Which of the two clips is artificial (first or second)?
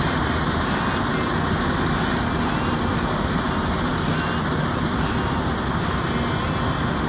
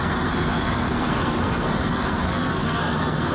second